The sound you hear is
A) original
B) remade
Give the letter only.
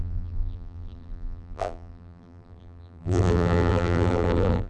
B